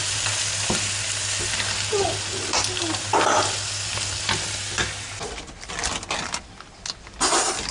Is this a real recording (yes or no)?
yes